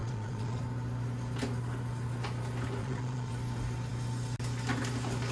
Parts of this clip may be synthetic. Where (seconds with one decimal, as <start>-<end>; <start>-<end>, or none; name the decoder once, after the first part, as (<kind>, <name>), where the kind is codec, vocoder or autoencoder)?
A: 0.0-0.6 (vocoder, Vocos); 2.8-3.3